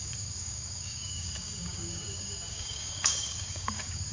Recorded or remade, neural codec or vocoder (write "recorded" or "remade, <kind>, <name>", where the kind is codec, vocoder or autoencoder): remade, codec, DAC